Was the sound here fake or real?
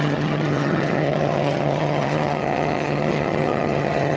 fake